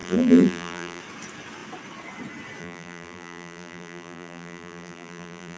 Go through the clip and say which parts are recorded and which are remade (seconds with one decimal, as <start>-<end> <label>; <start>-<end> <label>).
0.0-1.0 remade; 1.0-2.6 recorded; 2.6-5.6 remade